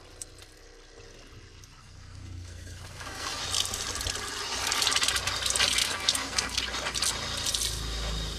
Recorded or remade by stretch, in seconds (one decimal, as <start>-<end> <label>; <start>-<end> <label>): 0.0-1.8 recorded; 1.8-3.4 remade; 3.4-5.8 recorded; 5.8-6.6 remade; 6.6-8.4 recorded